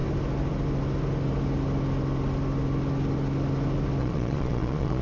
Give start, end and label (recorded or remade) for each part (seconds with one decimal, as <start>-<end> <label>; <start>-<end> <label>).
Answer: 0.0-4.0 recorded; 4.0-5.0 remade